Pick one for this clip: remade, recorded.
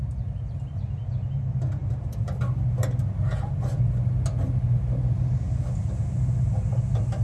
recorded